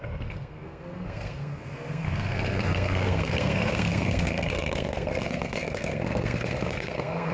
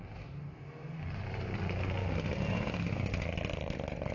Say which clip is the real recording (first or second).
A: second